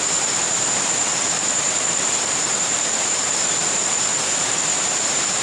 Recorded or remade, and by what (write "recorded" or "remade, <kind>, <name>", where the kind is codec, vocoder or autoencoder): remade, vocoder, BigVGAN v2